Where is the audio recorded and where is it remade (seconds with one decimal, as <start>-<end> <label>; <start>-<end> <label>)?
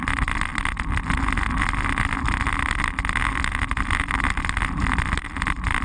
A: 0.0-5.8 recorded